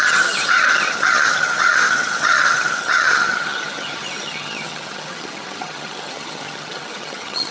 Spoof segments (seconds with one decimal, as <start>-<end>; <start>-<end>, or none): 0.0-7.5